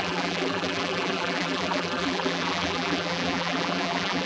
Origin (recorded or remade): remade